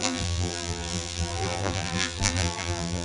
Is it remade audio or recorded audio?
remade